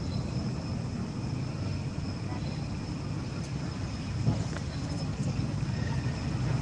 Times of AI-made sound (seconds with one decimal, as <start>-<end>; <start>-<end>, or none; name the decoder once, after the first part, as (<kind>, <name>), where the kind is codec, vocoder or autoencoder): 5.1-6.0 (codec, DAC)